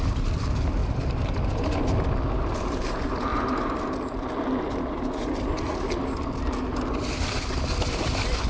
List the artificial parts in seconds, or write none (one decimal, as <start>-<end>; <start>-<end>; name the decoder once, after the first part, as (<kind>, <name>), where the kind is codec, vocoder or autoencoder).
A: 0.8-1.5 (vocoder, BigVGAN v2)